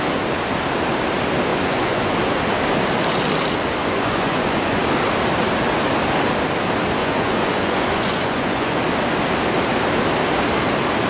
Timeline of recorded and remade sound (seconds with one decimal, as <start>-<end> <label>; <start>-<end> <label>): 0.0-1.5 recorded; 1.5-2.1 remade; 2.1-3.8 recorded; 3.8-4.8 remade; 4.8-7.0 recorded; 7.0-8.8 remade; 8.8-11.1 recorded